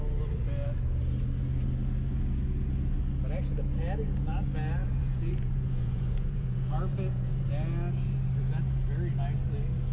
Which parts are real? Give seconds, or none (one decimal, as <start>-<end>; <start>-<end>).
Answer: 0.0-4.8; 7.3-9.9